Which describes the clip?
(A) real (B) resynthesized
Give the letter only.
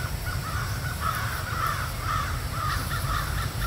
B